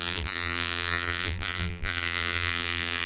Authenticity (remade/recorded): remade